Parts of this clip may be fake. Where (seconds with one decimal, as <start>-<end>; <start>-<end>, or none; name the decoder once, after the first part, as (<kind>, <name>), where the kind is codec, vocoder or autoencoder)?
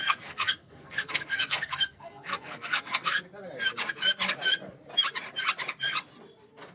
0.0-3.2 (codec, SNAC)